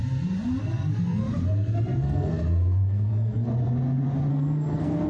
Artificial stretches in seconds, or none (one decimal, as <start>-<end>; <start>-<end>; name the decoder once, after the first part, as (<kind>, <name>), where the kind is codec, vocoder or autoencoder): 0.6-3.5 (codec, SNAC); 4.3-5.1